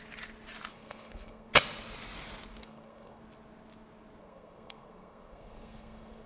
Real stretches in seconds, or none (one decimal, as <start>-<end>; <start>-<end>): 0.0-0.7; 1.5-2.6; 3.2-4.2